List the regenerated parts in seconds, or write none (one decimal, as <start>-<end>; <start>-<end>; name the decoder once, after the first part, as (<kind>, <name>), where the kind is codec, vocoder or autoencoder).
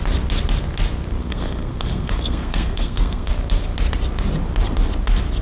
1.2-3.3 (codec, SNAC)